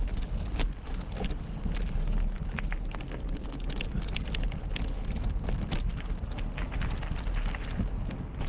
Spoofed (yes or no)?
no